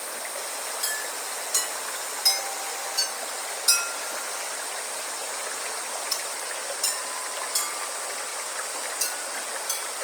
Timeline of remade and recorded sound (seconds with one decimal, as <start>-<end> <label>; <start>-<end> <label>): 0.0-10.0 recorded